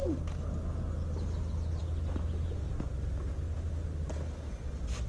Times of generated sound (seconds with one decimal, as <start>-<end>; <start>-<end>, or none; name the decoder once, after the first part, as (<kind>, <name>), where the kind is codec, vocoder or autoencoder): none